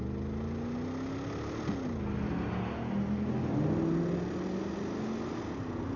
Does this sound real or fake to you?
real